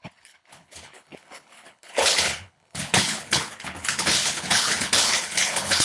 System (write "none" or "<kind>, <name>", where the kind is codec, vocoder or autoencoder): codec, HILCodec